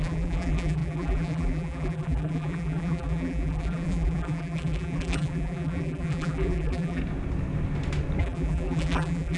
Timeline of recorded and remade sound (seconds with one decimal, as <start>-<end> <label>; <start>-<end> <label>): 0.0-7.0 remade; 7.0-8.2 recorded; 8.2-9.4 remade

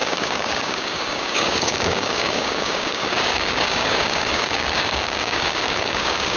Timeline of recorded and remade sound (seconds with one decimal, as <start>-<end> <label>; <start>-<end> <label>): 0.0-6.4 remade

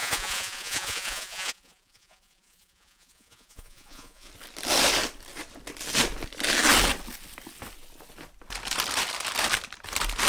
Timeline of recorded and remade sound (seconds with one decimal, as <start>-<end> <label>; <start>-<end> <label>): 0.0-4.3 remade; 4.3-10.3 recorded

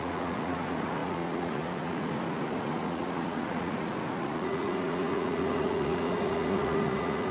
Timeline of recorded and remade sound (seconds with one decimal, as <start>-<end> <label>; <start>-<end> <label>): 0.0-7.3 remade

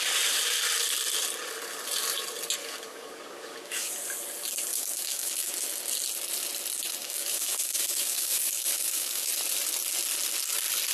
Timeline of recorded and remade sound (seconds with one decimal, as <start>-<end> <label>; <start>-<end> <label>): 0.0-2.6 recorded; 2.6-3.9 remade; 3.9-4.7 recorded; 4.7-5.5 remade; 5.5-7.0 recorded; 7.0-9.3 remade; 9.3-10.9 recorded

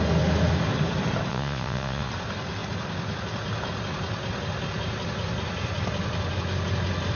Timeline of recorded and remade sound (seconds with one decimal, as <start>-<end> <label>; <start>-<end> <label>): 0.0-1.3 recorded; 1.3-2.1 remade; 2.1-7.2 recorded

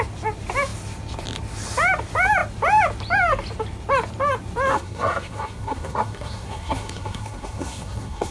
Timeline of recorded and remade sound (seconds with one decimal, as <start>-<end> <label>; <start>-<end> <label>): 0.0-4.7 recorded; 4.7-8.3 remade

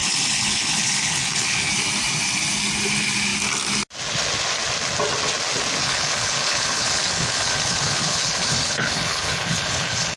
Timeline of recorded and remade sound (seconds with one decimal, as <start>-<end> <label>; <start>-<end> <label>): 0.0-1.7 remade; 1.7-5.8 recorded; 5.8-10.2 remade